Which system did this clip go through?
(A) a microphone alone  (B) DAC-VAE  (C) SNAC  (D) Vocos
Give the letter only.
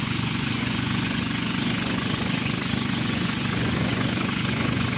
D